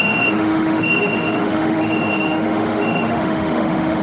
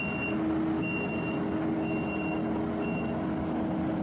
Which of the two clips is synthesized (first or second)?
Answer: first